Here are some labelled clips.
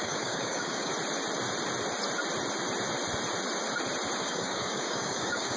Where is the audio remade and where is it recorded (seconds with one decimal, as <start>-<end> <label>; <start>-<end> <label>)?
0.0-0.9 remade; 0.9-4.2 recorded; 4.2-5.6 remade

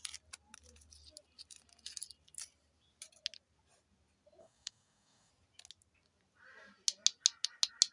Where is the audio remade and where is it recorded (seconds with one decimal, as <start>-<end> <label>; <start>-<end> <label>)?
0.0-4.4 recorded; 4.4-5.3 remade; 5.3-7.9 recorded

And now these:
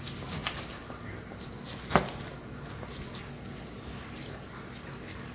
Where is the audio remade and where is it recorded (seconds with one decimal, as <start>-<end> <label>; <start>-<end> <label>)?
0.0-5.3 recorded

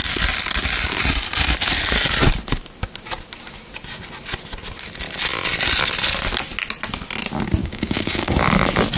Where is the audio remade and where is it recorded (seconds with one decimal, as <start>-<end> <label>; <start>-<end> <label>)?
0.0-7.6 recorded; 7.6-8.3 remade; 8.3-9.0 recorded